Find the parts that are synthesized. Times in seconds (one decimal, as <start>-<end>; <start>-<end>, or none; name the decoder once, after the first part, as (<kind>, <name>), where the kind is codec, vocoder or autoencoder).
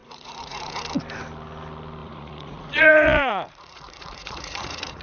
0.0-0.7 (vocoder, Vocos); 2.0-5.0